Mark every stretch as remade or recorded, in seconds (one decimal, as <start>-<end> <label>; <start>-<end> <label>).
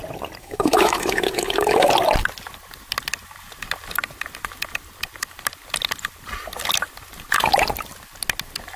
0.0-0.4 recorded; 0.4-1.9 remade; 1.9-8.8 recorded